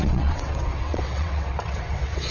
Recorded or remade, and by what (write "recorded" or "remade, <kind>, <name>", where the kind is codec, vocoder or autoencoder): remade, vocoder, WaveNeXt